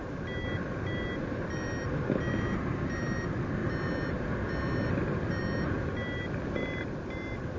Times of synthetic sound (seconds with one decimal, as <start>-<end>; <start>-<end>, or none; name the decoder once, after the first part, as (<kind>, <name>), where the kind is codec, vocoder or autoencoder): none